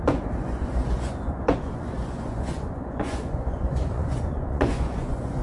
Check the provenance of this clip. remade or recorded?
remade